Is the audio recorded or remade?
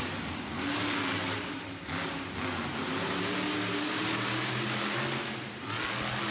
recorded